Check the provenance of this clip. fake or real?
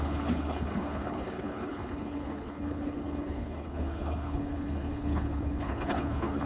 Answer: fake